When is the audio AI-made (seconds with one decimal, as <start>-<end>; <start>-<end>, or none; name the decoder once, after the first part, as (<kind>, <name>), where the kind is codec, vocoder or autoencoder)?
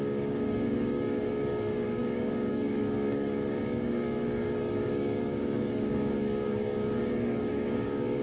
0.0-8.2 (codec, DAC)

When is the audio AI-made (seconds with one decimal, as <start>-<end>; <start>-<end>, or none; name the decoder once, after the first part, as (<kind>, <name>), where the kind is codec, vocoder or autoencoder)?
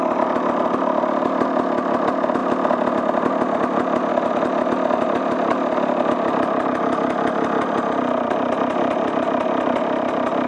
none